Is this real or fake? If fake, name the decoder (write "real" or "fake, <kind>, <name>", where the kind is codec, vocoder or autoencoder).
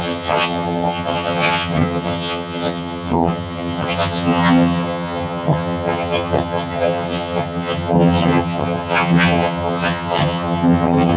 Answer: fake, vocoder, HiFi-GAN